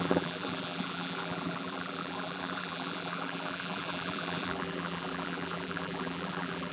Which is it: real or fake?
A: fake